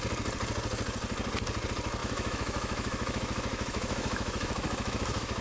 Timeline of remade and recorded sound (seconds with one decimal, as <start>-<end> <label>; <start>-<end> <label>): 0.0-2.0 recorded; 2.0-5.4 remade